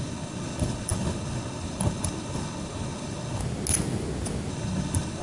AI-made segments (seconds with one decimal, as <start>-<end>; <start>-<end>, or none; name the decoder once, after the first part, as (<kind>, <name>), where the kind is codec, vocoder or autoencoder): 0.0-3.4 (codec, HILCodec); 4.5-5.2